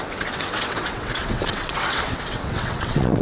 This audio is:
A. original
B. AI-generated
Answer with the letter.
B